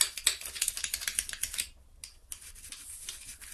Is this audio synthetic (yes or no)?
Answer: no